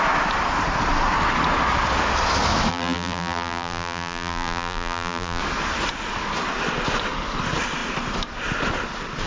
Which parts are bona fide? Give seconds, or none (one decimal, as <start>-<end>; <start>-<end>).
0.0-2.7; 5.4-9.3